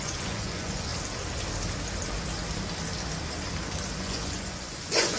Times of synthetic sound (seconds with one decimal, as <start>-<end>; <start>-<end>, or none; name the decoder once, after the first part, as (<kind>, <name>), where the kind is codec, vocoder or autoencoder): 0.0-0.9 (vocoder, Vocos); 4.0-5.2